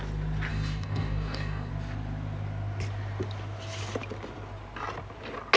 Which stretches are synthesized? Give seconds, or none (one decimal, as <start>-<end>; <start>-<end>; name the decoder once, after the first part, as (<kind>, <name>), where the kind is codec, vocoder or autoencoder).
0.5-1.7 (codec, DAC)